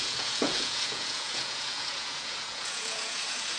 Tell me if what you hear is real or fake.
fake